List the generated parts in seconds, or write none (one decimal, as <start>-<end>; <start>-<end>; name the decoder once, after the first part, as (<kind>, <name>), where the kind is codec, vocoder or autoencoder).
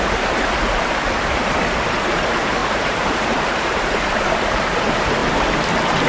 0.0-5.2 (vocoder, BigVGAN v2)